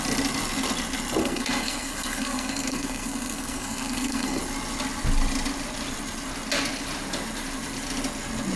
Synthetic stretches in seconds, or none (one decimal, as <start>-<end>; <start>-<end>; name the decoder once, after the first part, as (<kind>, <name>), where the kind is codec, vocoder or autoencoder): 1.2-4.4 (codec, SNAC)